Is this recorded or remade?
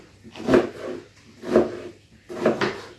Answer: recorded